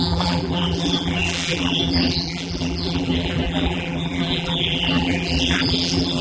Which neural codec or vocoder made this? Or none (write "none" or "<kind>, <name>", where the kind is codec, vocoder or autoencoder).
vocoder, BigVGAN v2